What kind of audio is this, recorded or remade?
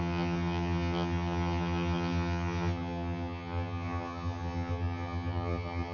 remade